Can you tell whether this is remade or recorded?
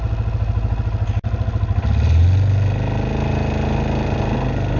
recorded